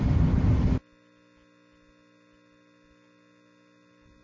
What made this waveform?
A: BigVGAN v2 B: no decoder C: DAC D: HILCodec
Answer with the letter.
B